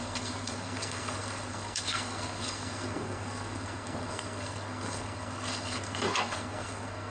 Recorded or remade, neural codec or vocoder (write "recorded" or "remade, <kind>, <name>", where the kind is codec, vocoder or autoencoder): remade, codec, SNAC